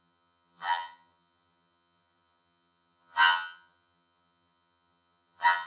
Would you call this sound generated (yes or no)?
yes